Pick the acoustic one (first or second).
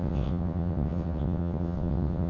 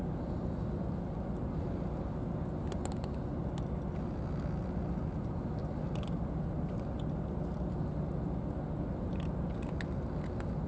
second